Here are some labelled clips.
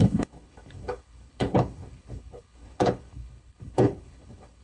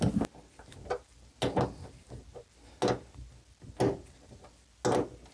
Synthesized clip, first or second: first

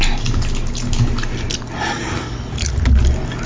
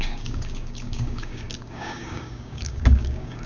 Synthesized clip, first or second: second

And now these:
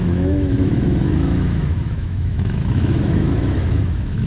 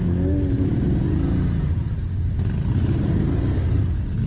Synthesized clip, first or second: first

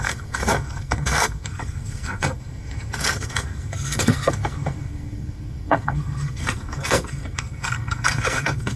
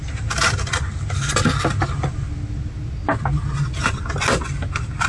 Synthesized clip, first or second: first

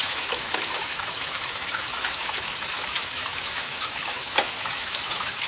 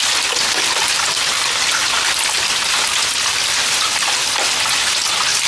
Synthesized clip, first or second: first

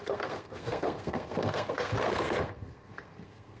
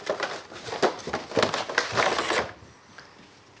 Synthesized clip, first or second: first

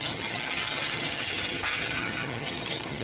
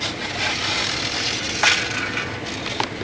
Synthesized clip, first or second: first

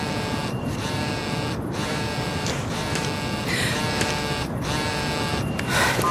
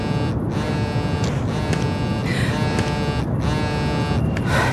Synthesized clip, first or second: first